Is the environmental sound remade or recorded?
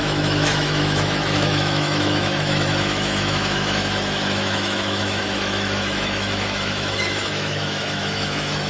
remade